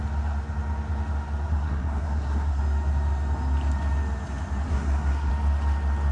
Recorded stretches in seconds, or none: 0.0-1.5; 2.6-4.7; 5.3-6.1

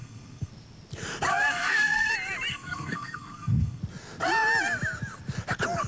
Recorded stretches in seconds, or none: 0.5-1.3; 2.1-2.5; 3.8-5.9

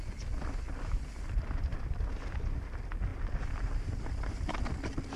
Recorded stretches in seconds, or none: 0.0-5.2

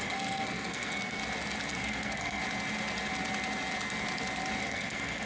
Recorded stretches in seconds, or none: 1.2-1.7; 2.4-4.6

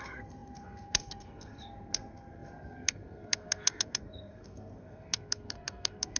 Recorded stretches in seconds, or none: none

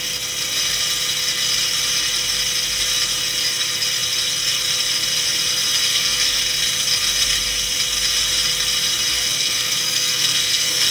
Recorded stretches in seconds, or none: 0.0-5.9; 6.4-9.1

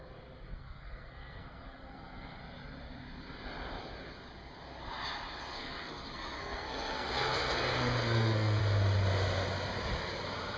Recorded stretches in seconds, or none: 0.0-0.5; 2.4-5.5; 8.6-10.6